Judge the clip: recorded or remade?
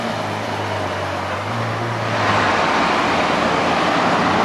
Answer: recorded